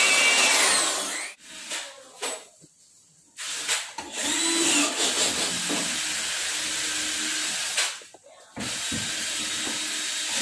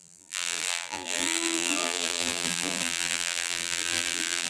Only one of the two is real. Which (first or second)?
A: first